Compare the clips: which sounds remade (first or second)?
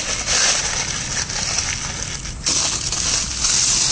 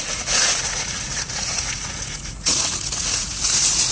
second